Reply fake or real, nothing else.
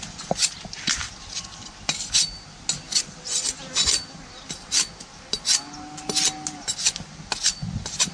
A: real